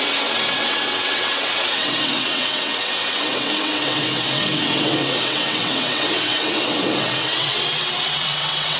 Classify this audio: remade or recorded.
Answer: remade